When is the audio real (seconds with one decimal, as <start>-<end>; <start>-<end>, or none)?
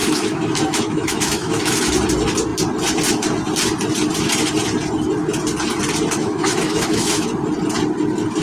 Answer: 1.8-6.2; 7.3-8.4